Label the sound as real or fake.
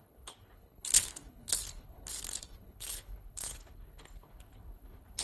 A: fake